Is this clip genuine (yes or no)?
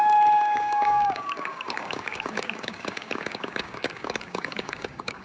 no